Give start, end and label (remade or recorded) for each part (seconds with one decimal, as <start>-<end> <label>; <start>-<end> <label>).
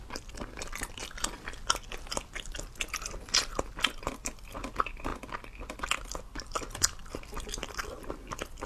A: 0.0-7.0 recorded; 7.0-7.5 remade; 7.5-8.7 recorded